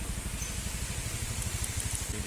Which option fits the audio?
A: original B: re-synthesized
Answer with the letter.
A